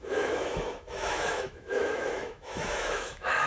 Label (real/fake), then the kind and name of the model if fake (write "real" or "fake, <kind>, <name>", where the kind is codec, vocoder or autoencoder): fake, autoencoder, DAC-VAE